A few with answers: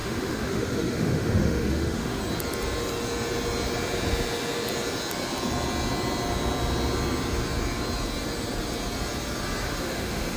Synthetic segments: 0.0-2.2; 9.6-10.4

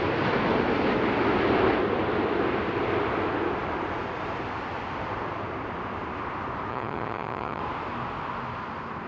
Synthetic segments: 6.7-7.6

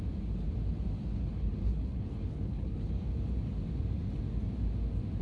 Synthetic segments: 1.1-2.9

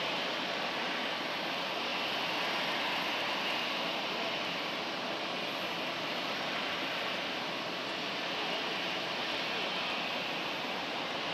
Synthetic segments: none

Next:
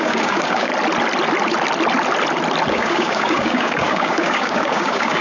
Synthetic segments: 0.0-0.7; 2.7-5.2

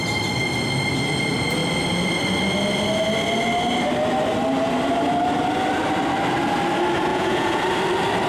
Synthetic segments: 7.1-7.6

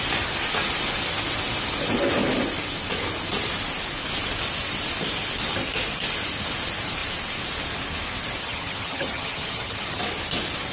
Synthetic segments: 8.4-10.0